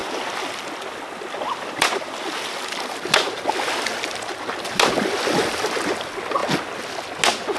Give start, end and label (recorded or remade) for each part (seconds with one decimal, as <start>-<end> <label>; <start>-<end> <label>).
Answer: 0.0-7.6 recorded